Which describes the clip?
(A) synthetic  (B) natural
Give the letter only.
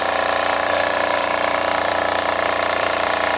A